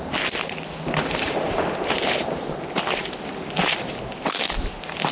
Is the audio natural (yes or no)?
yes